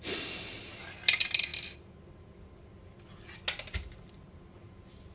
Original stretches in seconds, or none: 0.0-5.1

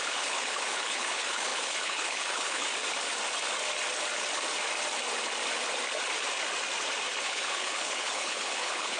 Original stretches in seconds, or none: 2.7-7.2

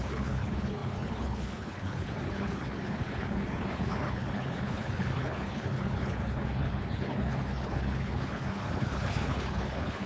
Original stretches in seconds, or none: none

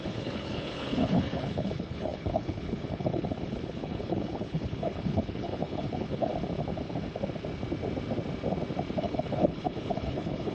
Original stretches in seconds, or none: 6.3-9.0